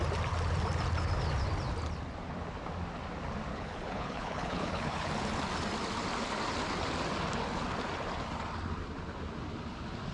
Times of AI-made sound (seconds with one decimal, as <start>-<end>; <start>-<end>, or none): 3.5-5.1